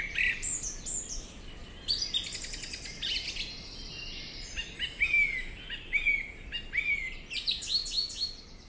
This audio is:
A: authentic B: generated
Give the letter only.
A